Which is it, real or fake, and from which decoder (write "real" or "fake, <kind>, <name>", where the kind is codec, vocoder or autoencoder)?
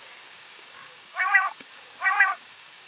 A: fake, codec, DAC